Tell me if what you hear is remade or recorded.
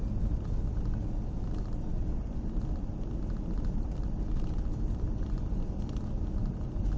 recorded